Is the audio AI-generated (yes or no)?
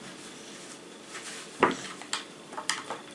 no